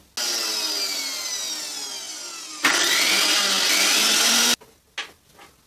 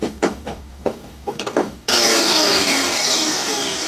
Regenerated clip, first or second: second